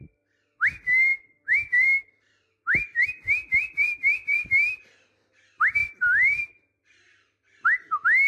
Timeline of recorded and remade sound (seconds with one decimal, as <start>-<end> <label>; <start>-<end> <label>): 0.0-1.1 recorded; 1.1-4.7 remade; 4.7-8.3 recorded